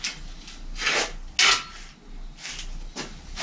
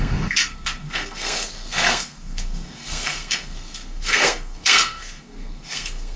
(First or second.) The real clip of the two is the first